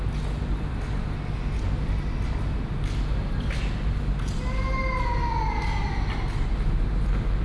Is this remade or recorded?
recorded